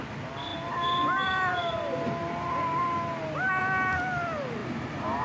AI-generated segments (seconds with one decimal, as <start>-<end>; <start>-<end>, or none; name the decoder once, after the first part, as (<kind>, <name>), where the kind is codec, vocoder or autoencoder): none